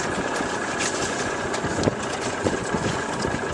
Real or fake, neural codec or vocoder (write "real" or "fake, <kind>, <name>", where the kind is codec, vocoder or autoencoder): fake, vocoder, Vocos